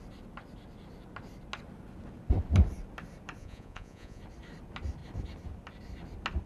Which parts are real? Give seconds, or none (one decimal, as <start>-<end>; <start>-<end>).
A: 0.0-3.4; 4.2-6.5